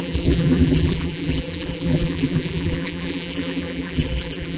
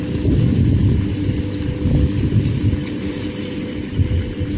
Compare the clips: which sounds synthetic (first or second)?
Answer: first